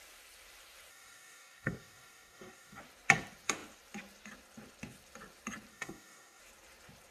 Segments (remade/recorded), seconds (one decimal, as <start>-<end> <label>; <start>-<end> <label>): 0.0-0.9 recorded; 0.9-2.8 remade; 2.8-5.7 recorded; 5.7-6.4 remade; 6.4-7.1 recorded